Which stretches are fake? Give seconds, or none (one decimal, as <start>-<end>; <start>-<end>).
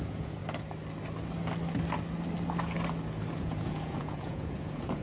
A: 0.0-0.4; 3.4-5.0